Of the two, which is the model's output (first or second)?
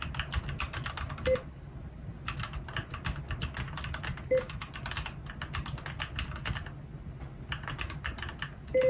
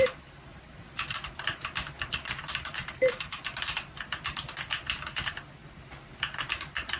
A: second